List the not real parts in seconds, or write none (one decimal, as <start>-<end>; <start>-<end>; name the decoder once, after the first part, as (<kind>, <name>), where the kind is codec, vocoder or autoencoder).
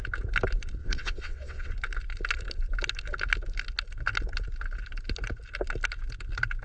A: 0.8-1.7 (vocoder, WaveNeXt)